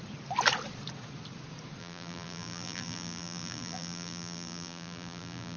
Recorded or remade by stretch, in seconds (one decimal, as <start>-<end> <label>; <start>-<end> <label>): 0.0-1.8 recorded; 1.8-5.6 remade